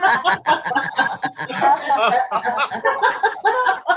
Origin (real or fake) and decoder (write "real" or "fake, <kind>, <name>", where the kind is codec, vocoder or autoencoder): real